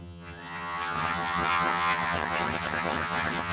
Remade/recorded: remade